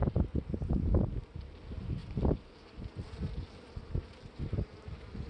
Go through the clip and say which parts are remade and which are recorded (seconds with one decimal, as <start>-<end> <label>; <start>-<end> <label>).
0.0-5.3 recorded